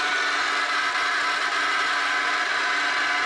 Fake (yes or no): no